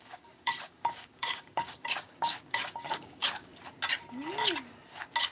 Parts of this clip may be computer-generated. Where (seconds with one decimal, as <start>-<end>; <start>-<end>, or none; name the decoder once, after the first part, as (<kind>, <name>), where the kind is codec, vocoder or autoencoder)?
0.0-3.5 (codec, DAC)